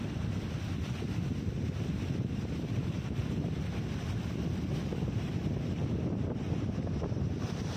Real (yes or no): no